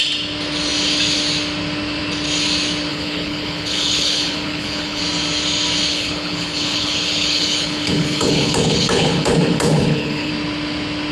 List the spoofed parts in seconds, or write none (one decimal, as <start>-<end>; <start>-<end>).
2.9-5.0; 5.9-10.3